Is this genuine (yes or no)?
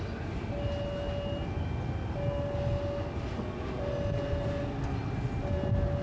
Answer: yes